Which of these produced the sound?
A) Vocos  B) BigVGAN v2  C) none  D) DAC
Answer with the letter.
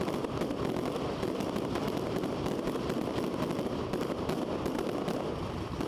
B